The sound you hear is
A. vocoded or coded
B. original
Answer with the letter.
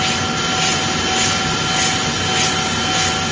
B